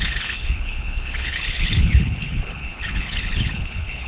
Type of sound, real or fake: fake